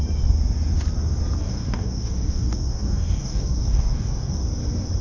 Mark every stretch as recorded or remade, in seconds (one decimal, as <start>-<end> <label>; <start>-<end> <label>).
0.0-1.4 recorded; 1.4-4.4 remade; 4.4-5.0 recorded